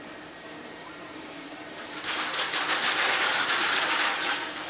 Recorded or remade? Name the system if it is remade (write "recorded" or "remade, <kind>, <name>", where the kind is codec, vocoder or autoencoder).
remade, vocoder, BigVGAN v2